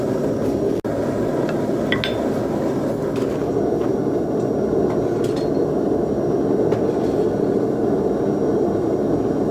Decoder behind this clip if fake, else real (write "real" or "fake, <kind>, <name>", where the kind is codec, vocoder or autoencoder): real